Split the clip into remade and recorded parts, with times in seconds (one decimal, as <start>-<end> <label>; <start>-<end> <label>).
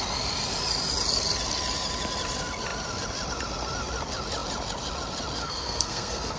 0.0-5.4 recorded; 5.4-6.4 remade